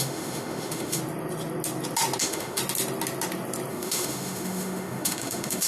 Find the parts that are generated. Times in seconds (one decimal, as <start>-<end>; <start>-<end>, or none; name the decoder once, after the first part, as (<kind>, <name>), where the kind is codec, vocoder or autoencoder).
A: 0.0-1.0 (autoencoder, DAC-VAE); 2.2-2.6; 3.7-5.7